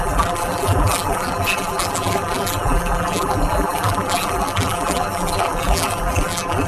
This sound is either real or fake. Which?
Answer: fake